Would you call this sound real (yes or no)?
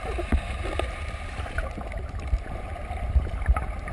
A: yes